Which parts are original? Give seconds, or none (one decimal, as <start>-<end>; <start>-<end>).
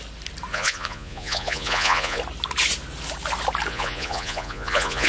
0.0-0.5; 2.2-3.7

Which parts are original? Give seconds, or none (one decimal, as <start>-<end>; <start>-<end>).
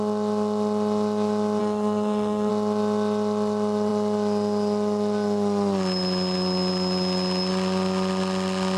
0.0-1.6; 2.5-8.8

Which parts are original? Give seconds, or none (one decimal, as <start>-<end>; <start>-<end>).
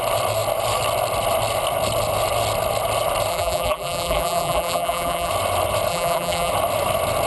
0.0-3.3; 5.3-5.9; 6.5-7.3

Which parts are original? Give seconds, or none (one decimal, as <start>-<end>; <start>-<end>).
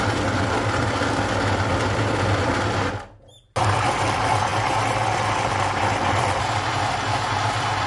0.0-7.9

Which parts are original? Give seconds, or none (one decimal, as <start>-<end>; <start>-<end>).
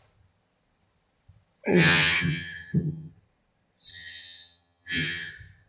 0.0-1.7; 3.1-3.9; 5.3-5.7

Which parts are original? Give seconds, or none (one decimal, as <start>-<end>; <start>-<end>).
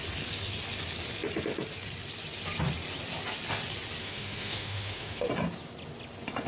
0.0-4.0; 5.3-6.5